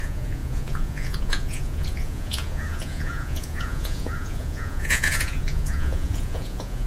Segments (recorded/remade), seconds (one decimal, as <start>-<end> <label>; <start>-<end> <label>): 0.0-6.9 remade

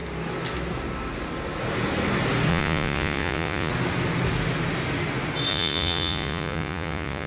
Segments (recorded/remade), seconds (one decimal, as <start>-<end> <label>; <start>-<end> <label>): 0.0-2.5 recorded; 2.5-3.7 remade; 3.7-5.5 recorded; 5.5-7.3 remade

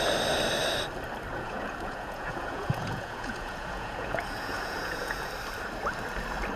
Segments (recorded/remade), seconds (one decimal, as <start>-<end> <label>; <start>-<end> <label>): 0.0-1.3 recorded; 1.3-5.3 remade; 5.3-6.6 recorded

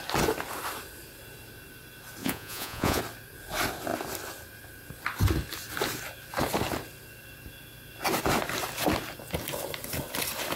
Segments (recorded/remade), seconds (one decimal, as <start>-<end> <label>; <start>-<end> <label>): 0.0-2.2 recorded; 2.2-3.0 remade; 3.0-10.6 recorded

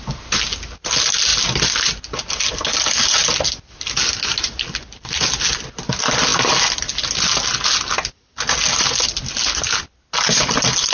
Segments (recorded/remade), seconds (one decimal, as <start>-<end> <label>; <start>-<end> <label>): 0.0-10.9 recorded

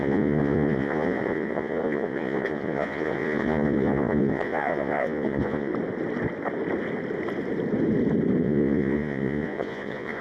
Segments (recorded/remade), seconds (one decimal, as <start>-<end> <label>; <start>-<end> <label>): 0.0-5.7 remade; 5.7-8.4 recorded; 8.4-10.2 remade